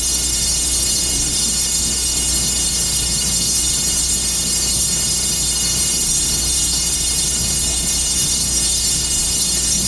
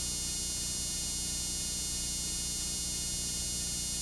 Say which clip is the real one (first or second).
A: second